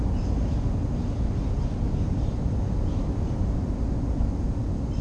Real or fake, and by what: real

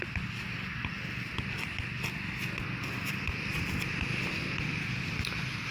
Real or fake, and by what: real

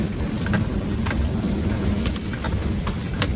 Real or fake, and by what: real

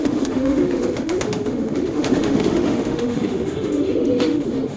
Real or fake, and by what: fake, autoencoder, DAC-VAE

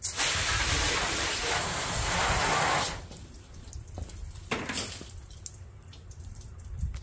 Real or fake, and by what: real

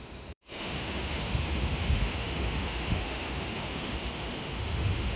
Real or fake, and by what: fake, autoencoder, DAC-VAE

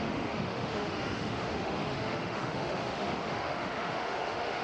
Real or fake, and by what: fake, autoencoder, DAC-VAE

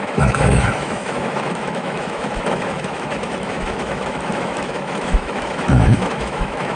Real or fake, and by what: fake, autoencoder, DAC-VAE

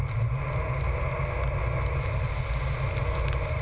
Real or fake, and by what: real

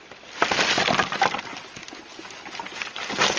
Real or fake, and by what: real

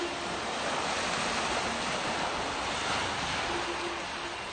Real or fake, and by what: real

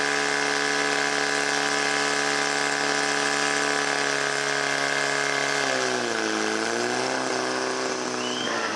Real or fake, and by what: real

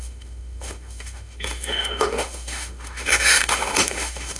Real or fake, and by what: fake, autoencoder, DAC-VAE